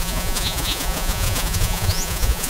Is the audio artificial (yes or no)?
yes